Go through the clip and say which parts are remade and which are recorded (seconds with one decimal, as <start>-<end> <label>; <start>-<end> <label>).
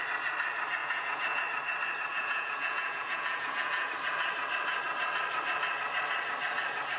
0.0-0.8 recorded; 0.8-1.4 remade; 1.4-2.1 recorded; 2.1-3.9 remade; 3.9-7.0 recorded